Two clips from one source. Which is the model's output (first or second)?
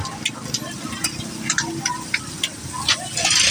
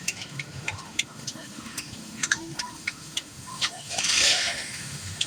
second